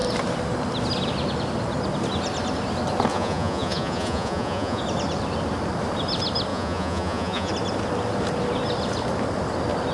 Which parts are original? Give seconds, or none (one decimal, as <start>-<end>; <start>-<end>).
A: 0.0-3.1; 4.8-6.5; 7.5-9.9